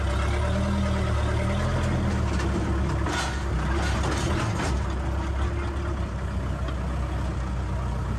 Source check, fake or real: real